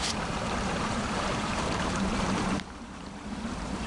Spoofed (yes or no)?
yes